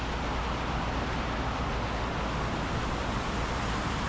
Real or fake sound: real